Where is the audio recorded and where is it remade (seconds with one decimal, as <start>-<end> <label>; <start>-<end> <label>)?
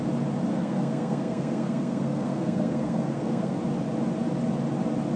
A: 0.0-0.5 recorded; 0.5-3.6 remade; 3.6-5.2 recorded